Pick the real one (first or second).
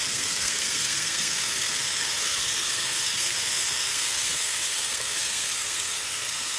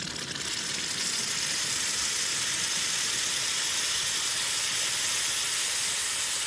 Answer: second